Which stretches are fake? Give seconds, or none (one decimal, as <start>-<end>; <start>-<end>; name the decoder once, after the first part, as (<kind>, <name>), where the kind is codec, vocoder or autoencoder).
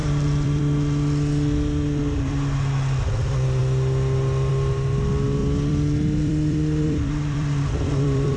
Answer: 0.0-0.6 (vocoder, BigVGAN v2); 5.4-8.4